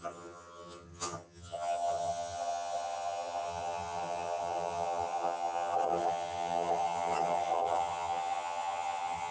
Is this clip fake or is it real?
fake